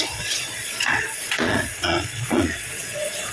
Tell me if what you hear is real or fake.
fake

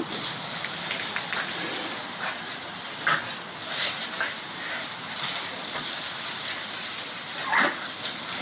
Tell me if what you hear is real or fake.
real